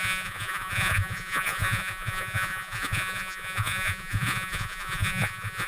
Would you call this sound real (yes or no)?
no